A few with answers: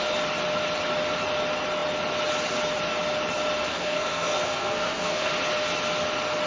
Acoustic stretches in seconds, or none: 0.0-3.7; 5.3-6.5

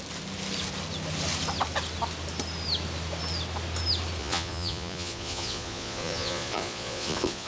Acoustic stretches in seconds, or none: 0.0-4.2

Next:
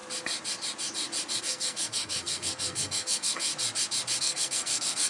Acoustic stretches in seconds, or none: 0.0-1.4; 3.5-4.2

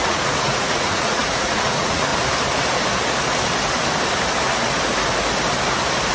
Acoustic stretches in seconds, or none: 2.1-6.1

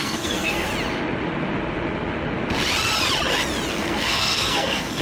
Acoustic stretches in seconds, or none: 0.7-3.7